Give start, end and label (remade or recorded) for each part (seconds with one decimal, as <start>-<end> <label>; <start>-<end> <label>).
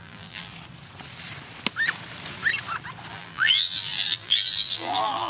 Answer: 0.0-0.5 remade; 0.5-3.1 recorded; 3.1-5.3 remade